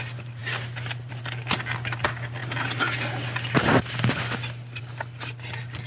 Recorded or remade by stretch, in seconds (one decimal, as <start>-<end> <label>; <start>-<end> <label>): 0.0-5.9 recorded